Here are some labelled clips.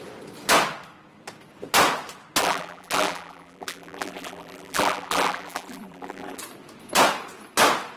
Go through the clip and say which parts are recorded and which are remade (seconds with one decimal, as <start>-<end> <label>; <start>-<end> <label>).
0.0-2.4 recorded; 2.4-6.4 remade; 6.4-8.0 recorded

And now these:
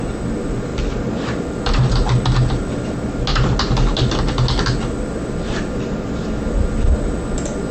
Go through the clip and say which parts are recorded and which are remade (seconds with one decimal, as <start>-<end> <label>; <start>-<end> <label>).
0.0-7.7 recorded

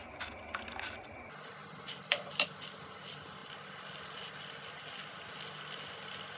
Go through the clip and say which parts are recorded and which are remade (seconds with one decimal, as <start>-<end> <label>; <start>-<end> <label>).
0.0-1.6 recorded; 1.6-2.3 remade; 2.3-6.4 recorded

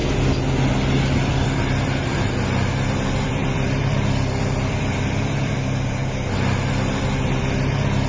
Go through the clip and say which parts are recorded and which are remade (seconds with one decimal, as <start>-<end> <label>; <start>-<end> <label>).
0.0-1.0 recorded; 1.0-6.0 remade; 6.0-6.7 recorded; 6.7-8.1 remade

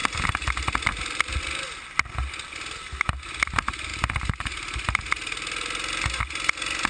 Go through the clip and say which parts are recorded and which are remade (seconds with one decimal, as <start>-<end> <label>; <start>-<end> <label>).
0.0-1.4 remade; 1.4-6.9 recorded

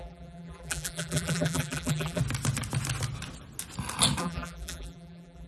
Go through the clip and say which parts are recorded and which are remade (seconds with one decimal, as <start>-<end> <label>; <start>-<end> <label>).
0.0-2.2 remade; 2.2-4.2 recorded; 4.2-5.5 remade

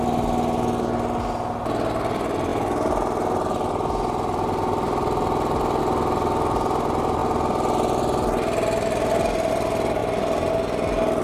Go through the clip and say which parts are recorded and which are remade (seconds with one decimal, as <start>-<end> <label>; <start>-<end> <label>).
0.0-11.2 recorded